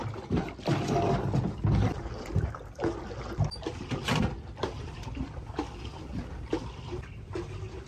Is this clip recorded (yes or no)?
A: yes